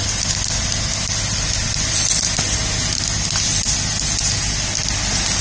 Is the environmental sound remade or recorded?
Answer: recorded